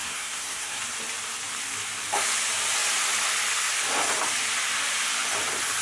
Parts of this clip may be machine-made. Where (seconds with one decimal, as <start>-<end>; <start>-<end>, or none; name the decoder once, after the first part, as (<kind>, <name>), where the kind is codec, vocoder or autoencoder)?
0.0-0.8 (codec, SNAC)